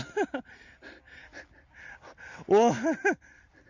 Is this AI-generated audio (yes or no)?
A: no